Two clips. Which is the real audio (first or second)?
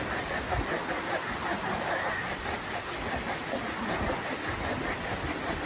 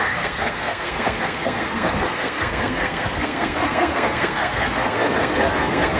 first